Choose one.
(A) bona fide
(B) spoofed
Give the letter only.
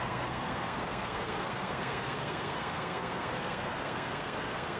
B